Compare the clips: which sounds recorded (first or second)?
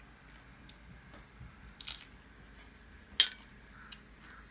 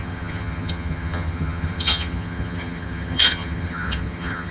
first